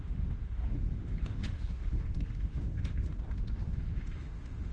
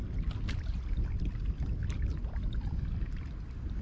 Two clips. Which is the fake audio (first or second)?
first